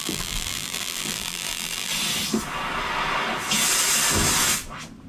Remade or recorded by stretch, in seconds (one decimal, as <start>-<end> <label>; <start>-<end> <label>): 0.0-1.9 remade; 1.9-5.1 recorded